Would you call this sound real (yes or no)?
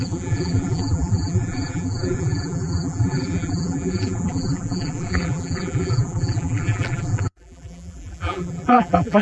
no